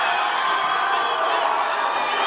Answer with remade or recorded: recorded